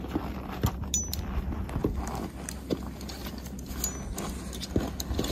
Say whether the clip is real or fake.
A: real